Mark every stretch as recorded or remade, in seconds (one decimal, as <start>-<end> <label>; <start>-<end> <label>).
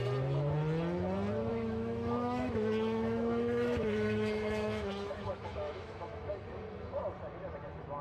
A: 0.0-1.5 recorded; 1.5-6.3 remade; 6.3-8.0 recorded